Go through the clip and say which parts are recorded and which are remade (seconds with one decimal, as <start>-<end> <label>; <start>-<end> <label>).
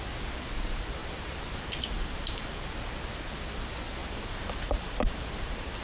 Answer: 0.0-1.0 recorded; 1.0-2.6 remade; 2.6-4.0 recorded; 4.0-5.8 remade